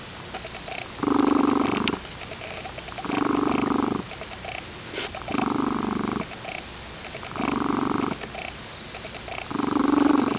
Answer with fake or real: real